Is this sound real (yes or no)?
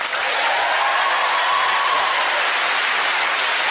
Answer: yes